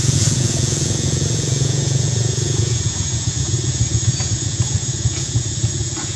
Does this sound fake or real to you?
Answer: fake